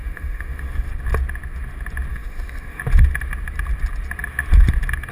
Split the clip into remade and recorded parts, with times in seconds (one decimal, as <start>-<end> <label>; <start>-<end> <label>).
0.0-0.9 remade; 0.9-2.1 recorded; 2.1-2.8 remade; 2.8-5.1 recorded